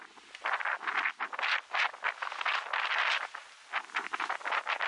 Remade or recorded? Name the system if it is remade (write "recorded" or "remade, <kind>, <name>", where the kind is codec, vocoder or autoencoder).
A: recorded